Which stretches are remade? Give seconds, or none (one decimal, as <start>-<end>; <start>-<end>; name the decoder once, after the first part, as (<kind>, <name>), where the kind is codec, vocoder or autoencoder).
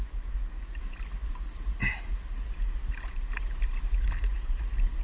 none